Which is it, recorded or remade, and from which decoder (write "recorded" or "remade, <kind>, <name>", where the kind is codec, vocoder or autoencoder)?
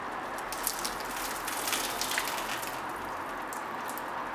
recorded